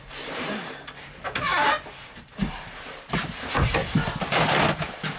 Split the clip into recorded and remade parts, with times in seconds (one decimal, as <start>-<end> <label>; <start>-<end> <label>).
0.0-3.8 remade; 3.8-5.2 recorded